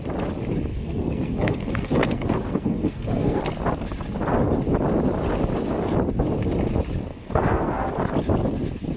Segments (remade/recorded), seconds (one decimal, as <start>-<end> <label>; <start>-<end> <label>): 0.0-0.7 recorded; 0.7-3.4 remade; 3.4-7.1 recorded; 7.1-7.9 remade; 7.9-9.0 recorded